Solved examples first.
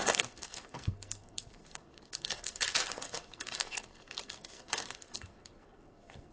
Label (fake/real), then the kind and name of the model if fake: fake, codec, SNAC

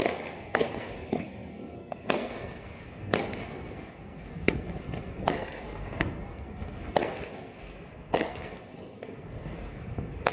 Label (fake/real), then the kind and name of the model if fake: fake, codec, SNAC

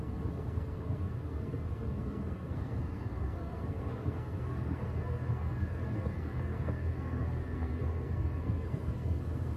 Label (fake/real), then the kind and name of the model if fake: fake, codec, SNAC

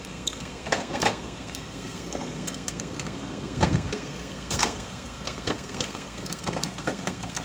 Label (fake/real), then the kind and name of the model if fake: fake, codec, SNAC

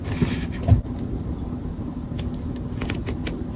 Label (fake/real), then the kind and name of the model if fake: real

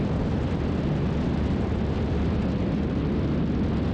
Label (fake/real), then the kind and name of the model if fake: real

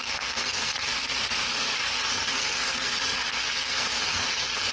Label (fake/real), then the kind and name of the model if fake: fake, codec, SNAC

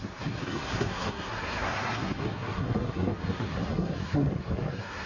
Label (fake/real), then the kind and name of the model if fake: fake, codec, SNAC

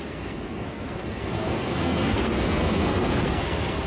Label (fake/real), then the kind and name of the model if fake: fake, codec, SNAC